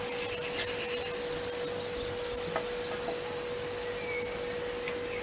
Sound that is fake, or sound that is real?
real